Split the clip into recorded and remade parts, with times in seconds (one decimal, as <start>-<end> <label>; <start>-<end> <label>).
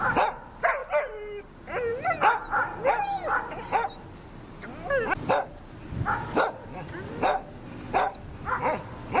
0.0-9.2 recorded